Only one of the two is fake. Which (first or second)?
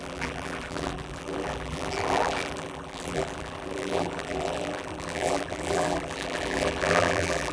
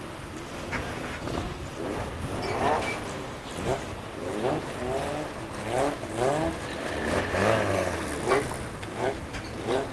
first